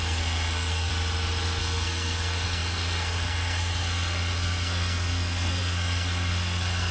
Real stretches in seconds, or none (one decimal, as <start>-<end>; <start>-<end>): 0.9-1.6